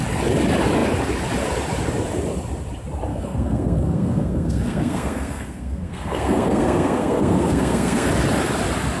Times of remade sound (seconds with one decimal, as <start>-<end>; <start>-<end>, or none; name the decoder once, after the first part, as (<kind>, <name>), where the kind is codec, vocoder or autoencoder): 3.1-8.1 (codec, SNAC)